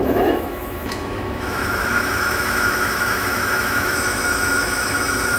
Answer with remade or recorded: remade